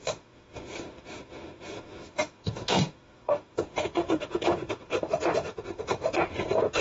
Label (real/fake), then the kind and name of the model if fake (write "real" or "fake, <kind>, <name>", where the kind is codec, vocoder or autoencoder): fake, autoencoder, DAC-VAE